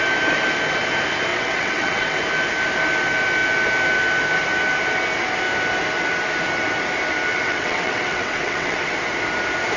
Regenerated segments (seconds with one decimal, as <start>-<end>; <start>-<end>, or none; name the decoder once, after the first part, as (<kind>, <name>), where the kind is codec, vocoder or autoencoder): 1.3-2.2 (vocoder, WaveNeXt); 7.3-9.0